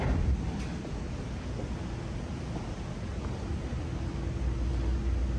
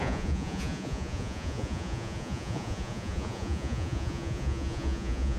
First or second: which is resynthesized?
second